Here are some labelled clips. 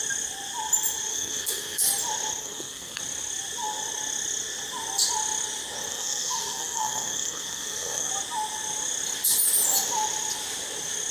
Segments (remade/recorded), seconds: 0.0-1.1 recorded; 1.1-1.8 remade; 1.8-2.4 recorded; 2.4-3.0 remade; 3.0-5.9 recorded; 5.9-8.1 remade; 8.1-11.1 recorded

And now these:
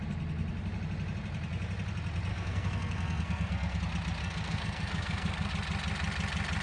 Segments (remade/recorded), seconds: 0.0-2.3 recorded; 2.3-3.8 remade; 3.8-4.2 recorded; 4.2-5.5 remade; 5.5-6.6 recorded

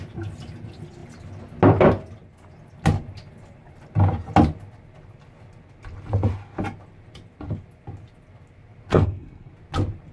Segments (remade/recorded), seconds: 0.0-8.9 recorded; 8.9-9.5 remade; 9.5-10.1 recorded

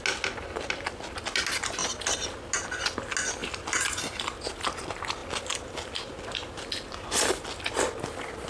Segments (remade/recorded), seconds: 0.0-8.5 recorded

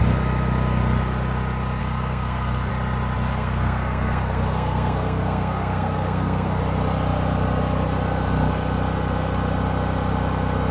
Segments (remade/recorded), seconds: 0.0-1.8 recorded; 1.8-2.7 remade; 2.7-3.3 recorded; 3.3-6.6 remade; 6.6-10.7 recorded

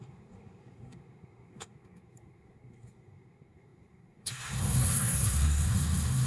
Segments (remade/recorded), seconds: 0.0-6.3 remade

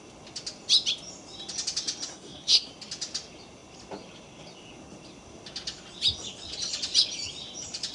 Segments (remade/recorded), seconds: 0.0-2.1 recorded; 2.1-2.7 remade; 2.7-7.9 recorded